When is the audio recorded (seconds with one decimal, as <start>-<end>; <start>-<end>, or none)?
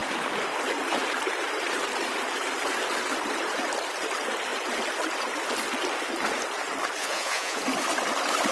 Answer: 0.0-7.0; 7.6-8.5